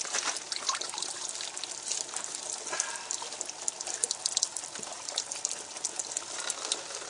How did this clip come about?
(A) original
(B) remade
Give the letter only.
A